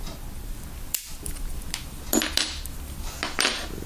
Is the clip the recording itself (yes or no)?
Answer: yes